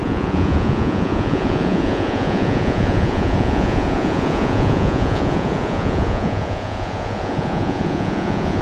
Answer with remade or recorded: remade